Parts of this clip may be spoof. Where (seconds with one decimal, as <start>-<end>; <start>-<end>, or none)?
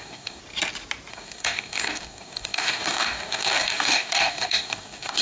0.0-0.4; 1.1-5.2